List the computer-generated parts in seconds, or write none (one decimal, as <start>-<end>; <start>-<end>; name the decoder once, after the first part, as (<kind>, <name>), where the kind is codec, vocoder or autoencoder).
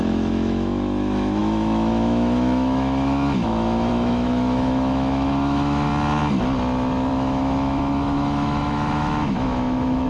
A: 0.0-5.9 (autoencoder, DAC-VAE); 7.1-10.1